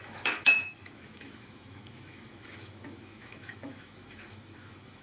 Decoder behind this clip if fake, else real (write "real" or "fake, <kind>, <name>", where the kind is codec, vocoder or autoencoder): fake, autoencoder, DAC-VAE